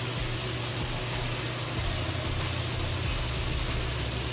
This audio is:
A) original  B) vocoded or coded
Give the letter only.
A